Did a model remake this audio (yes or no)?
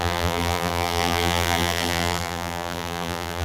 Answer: yes